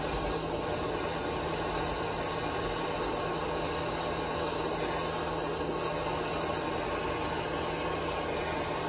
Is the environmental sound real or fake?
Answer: real